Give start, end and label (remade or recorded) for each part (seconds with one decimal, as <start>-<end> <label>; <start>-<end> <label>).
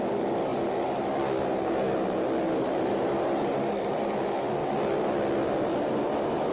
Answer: 0.0-6.5 recorded